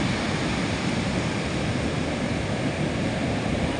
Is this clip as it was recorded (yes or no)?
no